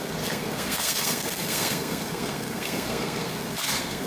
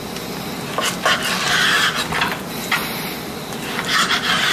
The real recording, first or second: second